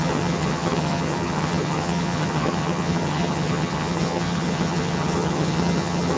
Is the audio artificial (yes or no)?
yes